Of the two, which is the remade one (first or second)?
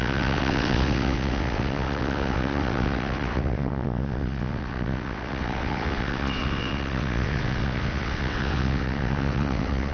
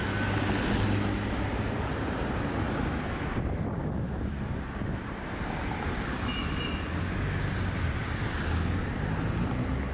first